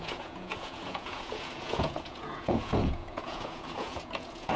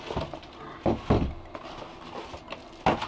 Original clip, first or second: second